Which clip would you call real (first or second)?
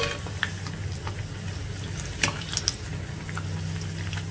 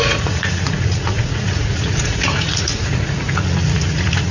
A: first